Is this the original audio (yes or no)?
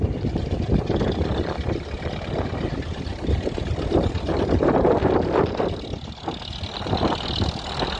yes